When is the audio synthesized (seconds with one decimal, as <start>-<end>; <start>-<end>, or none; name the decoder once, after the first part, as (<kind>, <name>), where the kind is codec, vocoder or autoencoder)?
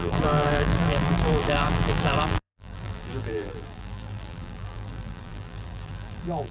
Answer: 0.0-6.5 (vocoder, BigVGAN v2)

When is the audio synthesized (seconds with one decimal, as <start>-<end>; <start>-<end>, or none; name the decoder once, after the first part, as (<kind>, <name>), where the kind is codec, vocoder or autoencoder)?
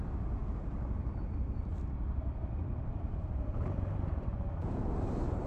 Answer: 2.6-4.3 (vocoder, BigVGAN v2)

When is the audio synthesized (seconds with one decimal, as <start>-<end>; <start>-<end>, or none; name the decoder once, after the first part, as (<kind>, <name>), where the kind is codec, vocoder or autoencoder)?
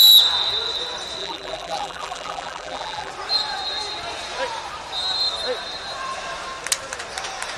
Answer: 1.2-3.1 (vocoder, BigVGAN v2)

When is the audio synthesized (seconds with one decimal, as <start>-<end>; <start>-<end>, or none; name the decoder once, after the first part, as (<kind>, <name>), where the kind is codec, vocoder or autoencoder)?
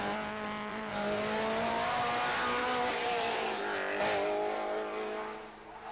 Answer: 0.7-2.0 (vocoder, BigVGAN v2); 2.6-3.6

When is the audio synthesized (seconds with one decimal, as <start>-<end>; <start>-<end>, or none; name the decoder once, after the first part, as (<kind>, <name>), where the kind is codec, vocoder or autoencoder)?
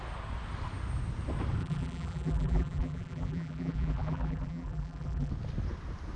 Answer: 1.6-5.3 (vocoder, BigVGAN v2)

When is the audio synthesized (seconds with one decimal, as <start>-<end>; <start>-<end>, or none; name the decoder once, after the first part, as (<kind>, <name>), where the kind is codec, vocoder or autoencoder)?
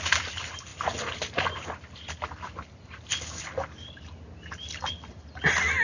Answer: none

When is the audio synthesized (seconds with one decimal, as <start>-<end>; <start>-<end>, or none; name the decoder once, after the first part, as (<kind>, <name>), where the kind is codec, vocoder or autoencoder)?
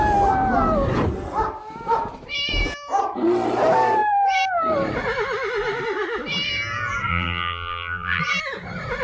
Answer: 7.1-8.2 (vocoder, BigVGAN v2)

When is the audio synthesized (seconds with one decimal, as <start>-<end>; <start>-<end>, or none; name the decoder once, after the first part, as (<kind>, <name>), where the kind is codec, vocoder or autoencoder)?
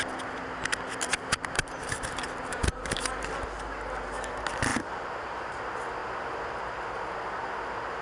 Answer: 1.1-3.2 (vocoder, BigVGAN v2); 4.7-5.6